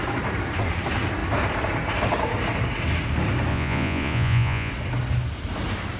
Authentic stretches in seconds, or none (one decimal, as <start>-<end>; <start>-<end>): 0.0-3.5; 4.7-6.0